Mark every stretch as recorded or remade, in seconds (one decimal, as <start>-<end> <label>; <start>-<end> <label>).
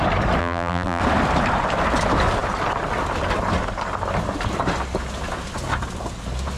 0.0-0.4 recorded; 0.4-1.0 remade; 1.0-6.6 recorded